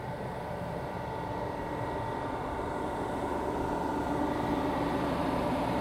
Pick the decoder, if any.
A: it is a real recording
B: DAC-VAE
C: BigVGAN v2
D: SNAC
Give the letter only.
C